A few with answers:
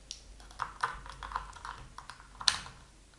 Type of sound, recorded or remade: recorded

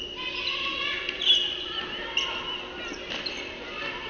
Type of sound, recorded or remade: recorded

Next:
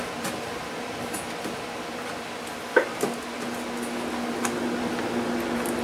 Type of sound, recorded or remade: recorded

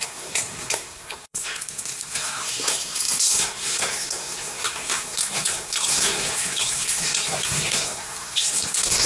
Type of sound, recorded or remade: remade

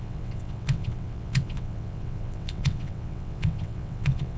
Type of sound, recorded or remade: remade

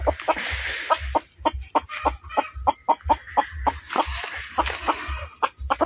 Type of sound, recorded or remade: recorded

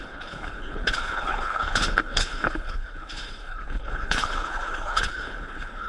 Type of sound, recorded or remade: remade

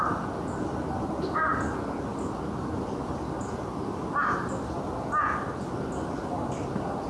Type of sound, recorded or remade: recorded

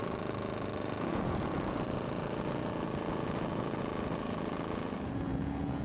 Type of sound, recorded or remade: remade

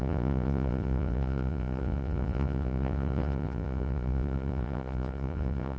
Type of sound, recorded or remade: remade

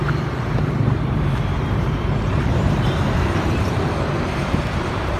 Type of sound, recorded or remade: remade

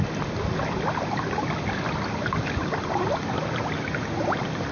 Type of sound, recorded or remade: recorded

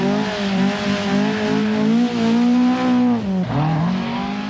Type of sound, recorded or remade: recorded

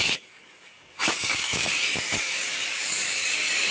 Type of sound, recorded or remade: remade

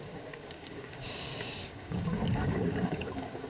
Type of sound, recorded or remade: remade